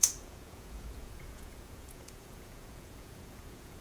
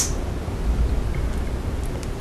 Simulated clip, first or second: first